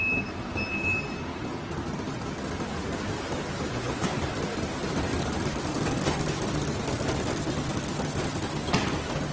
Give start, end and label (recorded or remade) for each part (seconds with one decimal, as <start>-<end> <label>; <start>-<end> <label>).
0.0-9.3 recorded